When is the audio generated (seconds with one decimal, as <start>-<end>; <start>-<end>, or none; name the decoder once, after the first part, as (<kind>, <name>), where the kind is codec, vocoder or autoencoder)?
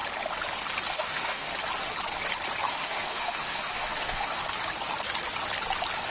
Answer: 0.9-1.5 (autoencoder, DAC-VAE); 2.7-4.4